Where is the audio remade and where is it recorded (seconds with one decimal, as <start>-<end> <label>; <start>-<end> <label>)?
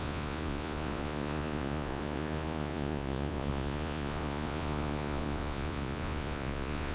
0.0-6.9 remade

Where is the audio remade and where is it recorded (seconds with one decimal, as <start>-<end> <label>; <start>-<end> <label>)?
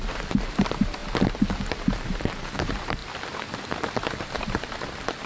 0.0-1.0 remade; 1.0-1.8 recorded; 1.8-3.0 remade; 3.0-4.2 recorded; 4.2-5.3 remade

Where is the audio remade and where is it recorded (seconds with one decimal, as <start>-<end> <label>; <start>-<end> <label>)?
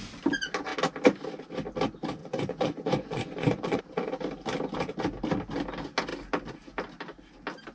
0.0-2.2 recorded; 2.2-3.8 remade; 3.8-7.7 recorded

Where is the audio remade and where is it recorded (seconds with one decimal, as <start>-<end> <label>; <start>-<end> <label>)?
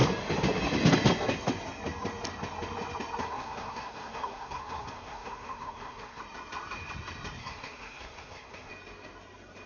0.0-3.2 recorded; 3.2-6.2 remade; 6.2-7.4 recorded; 7.4-8.7 remade; 8.7-9.7 recorded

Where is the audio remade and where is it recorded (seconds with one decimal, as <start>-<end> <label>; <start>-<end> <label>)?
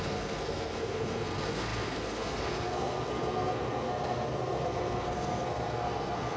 0.0-6.4 remade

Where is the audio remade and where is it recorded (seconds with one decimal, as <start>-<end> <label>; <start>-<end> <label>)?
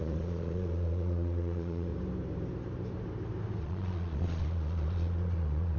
0.0-1.9 remade; 1.9-3.6 recorded; 3.6-5.8 remade